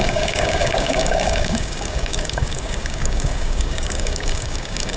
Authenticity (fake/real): fake